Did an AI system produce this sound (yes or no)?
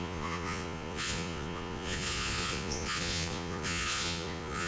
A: yes